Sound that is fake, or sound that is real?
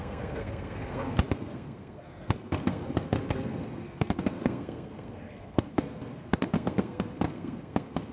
fake